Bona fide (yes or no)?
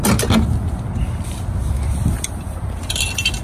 yes